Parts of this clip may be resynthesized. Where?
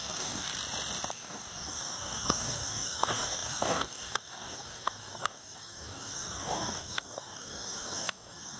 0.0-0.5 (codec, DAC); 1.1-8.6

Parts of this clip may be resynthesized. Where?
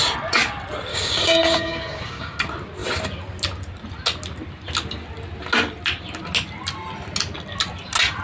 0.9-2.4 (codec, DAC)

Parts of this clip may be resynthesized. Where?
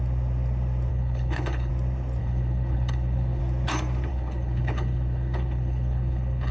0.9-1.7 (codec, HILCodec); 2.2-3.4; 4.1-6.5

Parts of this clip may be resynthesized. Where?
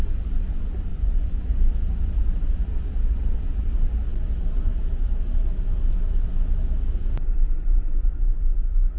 0.9-1.4 (vocoder, Vocos)